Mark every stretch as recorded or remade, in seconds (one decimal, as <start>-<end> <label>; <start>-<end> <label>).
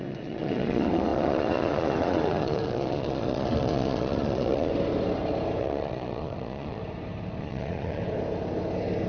0.0-4.7 remade; 4.7-5.6 recorded; 5.6-6.8 remade; 6.8-7.4 recorded; 7.4-8.0 remade; 8.0-9.1 recorded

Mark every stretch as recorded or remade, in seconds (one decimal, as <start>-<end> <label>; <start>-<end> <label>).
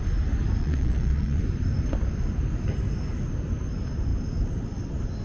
0.0-0.6 recorded; 0.6-1.4 remade; 1.4-5.2 recorded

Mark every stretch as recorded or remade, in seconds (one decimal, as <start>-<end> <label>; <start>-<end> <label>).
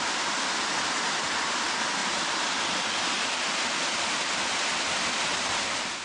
0.0-6.0 recorded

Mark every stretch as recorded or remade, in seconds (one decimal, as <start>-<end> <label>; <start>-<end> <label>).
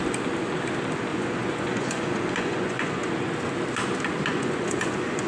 0.0-1.1 recorded; 1.1-3.1 remade; 3.1-4.3 recorded; 4.3-5.3 remade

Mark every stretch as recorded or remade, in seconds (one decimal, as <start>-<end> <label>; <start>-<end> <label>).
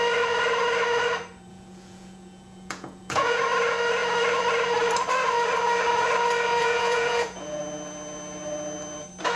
0.0-1.5 recorded; 1.5-3.4 remade; 3.4-6.6 recorded; 6.6-7.6 remade; 7.6-9.4 recorded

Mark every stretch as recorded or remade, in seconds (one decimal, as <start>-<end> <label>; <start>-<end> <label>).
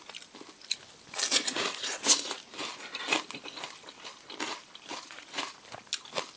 0.0-1.3 recorded; 1.3-2.3 remade; 2.3-4.9 recorded; 4.9-5.6 remade; 5.6-6.4 recorded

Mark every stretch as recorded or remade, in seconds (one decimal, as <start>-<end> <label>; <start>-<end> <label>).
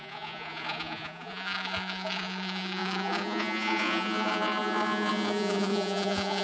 0.0-6.4 remade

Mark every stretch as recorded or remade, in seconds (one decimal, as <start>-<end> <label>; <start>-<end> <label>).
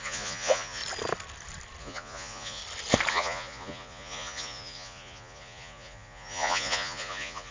0.0-0.8 remade; 0.8-1.8 recorded; 1.8-2.6 remade; 2.6-3.1 recorded; 3.1-7.5 remade